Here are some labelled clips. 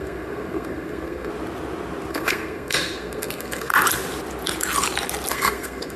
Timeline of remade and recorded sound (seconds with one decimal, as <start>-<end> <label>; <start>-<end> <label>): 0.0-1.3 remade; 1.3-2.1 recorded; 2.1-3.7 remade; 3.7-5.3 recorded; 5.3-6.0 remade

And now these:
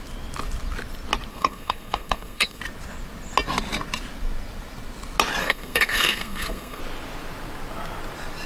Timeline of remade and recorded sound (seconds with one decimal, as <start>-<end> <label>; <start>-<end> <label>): 0.0-1.3 recorded; 1.3-2.6 remade; 2.6-5.4 recorded; 5.4-6.8 remade; 6.8-8.5 recorded

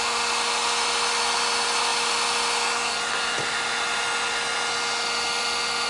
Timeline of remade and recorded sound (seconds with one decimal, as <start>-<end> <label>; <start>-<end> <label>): 0.0-5.9 recorded

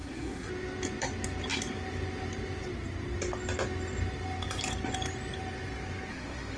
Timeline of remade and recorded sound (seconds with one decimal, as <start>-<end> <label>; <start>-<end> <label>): 0.0-0.5 remade; 0.5-6.1 recorded; 6.1-6.6 remade